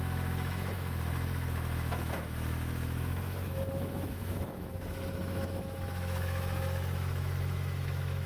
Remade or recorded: remade